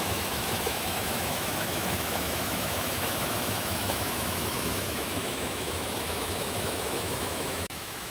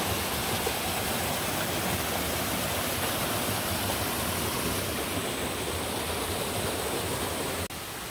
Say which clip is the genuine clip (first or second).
second